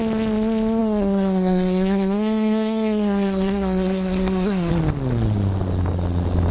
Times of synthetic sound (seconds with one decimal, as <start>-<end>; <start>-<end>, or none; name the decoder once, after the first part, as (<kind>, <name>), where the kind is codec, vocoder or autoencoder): 0.8-4.7 (codec, SNAC)

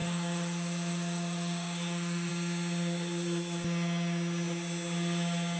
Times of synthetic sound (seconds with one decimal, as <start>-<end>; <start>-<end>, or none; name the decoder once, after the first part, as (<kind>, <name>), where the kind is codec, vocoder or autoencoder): 0.0-2.3 (autoencoder, DAC-VAE)

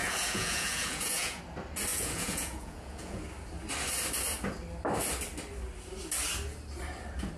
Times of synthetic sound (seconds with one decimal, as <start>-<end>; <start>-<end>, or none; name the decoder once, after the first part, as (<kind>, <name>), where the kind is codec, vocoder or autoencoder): 0.0-1.4 (vocoder, Vocos); 1.9-3.2

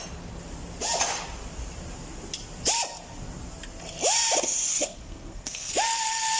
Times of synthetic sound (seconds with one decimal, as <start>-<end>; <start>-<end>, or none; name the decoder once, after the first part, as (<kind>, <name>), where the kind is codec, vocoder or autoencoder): 4.7-5.7 (codec, SNAC)

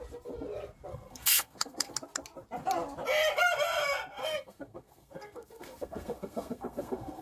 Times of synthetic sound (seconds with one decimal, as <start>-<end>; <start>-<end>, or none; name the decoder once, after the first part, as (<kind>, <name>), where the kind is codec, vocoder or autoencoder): 0.9-1.9 (codec, SNAC); 4.2-7.2

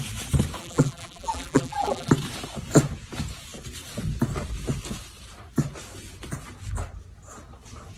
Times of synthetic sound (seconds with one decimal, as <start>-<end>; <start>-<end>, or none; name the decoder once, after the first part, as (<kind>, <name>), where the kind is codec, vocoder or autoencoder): 0.6-2.1 (vocoder, BigVGAN v2)